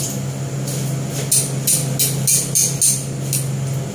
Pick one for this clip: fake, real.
real